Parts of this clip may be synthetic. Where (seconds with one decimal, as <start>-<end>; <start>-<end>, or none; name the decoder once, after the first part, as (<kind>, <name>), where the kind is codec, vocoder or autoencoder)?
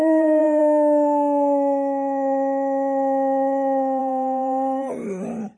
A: 0.0-0.6 (vocoder, BigVGAN v2); 4.0-5.6